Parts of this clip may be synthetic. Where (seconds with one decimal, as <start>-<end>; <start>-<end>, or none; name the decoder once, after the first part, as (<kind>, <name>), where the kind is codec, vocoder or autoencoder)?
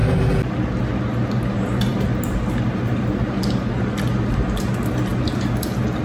none